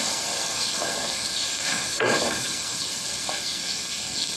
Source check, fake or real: fake